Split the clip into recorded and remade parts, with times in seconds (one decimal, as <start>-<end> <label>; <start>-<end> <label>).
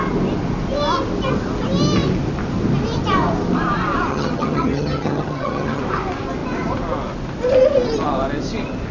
0.0-4.1 recorded; 4.1-5.8 remade; 5.8-8.9 recorded